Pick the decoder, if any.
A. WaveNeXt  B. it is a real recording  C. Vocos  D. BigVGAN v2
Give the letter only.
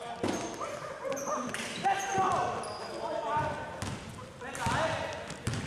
B